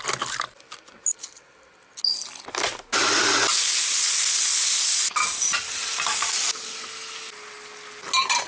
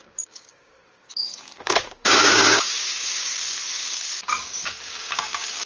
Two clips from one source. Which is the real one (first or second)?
first